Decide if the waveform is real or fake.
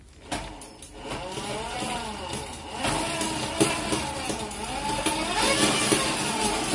real